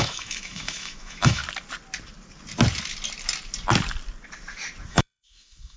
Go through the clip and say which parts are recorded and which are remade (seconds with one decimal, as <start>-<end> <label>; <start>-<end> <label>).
0.0-1.4 remade; 1.4-4.9 recorded; 4.9-5.8 remade